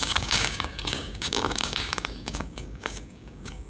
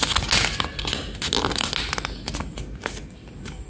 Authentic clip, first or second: second